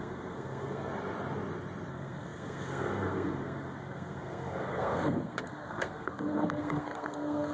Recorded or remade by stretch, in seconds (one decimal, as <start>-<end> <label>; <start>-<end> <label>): 0.0-0.9 remade; 0.9-1.9 recorded; 1.9-7.5 remade